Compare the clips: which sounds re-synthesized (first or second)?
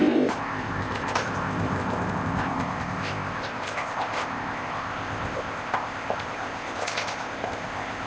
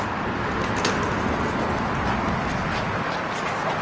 first